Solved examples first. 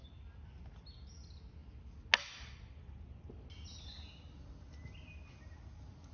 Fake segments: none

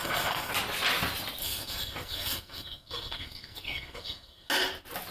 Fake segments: 0.0-0.5 (codec, SNAC); 1.4-4.5

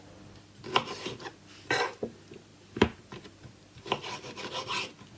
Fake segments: none

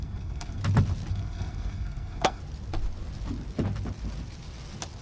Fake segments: 0.0-0.6 (codec, SNAC); 1.1-2.4

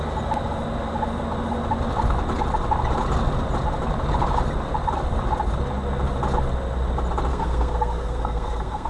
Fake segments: 7.3-8.9 (codec, SNAC)

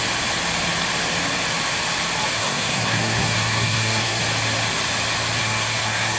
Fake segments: 2.4-4.2 (codec, SNAC); 5.4-6.2

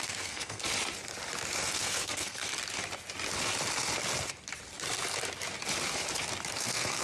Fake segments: 0.0-0.6 (codec, SNAC); 1.6-2.4; 6.6-7.0